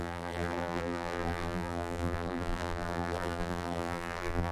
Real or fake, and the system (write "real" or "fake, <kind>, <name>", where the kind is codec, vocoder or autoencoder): fake, vocoder, BigVGAN v2